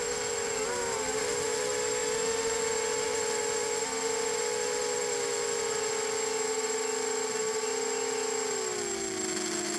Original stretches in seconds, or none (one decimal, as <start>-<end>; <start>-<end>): 0.0-9.8